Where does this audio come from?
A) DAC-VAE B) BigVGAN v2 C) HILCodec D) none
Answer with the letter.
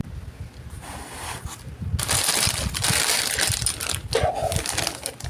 D